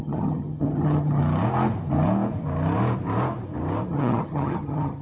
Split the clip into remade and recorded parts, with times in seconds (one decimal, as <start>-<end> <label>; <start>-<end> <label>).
0.0-1.2 remade; 1.2-3.9 recorded; 3.9-5.0 remade

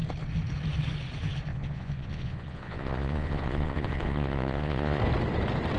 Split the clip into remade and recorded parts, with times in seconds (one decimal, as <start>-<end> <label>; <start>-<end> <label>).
0.0-1.5 recorded; 1.5-5.0 remade; 5.0-5.8 recorded

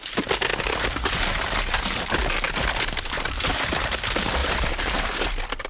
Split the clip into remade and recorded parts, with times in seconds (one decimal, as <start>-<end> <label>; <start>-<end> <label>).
0.0-4.4 recorded; 4.4-5.0 remade; 5.0-5.7 recorded

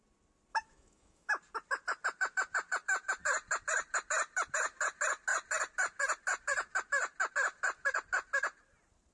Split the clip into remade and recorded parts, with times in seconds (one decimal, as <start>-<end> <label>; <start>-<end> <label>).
0.0-0.5 recorded; 0.5-1.3 remade; 1.3-9.1 recorded

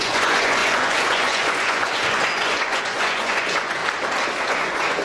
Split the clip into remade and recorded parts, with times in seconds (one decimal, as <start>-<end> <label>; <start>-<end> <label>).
0.0-3.8 remade; 3.8-4.5 recorded; 4.5-5.0 remade

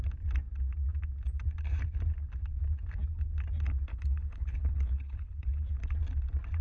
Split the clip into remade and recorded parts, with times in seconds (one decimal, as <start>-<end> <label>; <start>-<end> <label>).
0.0-3.9 recorded; 3.9-5.7 remade; 5.7-6.6 recorded